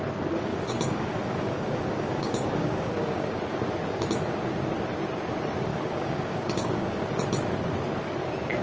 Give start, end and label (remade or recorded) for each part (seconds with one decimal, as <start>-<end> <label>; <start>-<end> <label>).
0.0-0.5 recorded; 0.5-3.4 remade; 3.4-5.7 recorded; 5.7-7.0 remade; 7.0-8.6 recorded

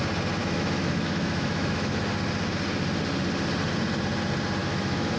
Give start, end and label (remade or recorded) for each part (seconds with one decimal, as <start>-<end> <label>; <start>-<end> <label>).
0.0-0.4 recorded; 0.4-2.0 remade; 2.0-4.6 recorded; 4.6-5.2 remade

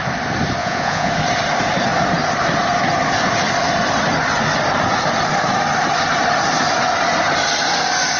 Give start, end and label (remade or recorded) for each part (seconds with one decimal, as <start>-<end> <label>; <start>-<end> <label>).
0.0-0.6 recorded; 0.6-1.1 remade; 1.1-8.2 recorded